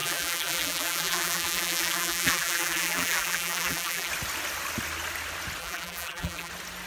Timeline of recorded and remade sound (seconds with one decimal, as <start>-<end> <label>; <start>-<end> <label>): 0.0-4.1 remade; 4.1-5.6 recorded; 5.6-6.5 remade; 6.5-6.9 recorded